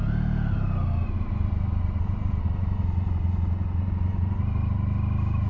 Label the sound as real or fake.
real